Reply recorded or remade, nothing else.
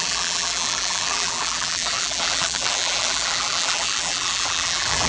remade